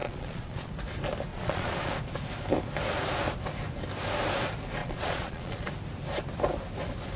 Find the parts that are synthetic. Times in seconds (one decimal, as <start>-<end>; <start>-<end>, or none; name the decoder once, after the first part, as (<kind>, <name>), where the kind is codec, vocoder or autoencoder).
0.0-0.7 (vocoder, Vocos); 1.3-1.9; 4.8-5.7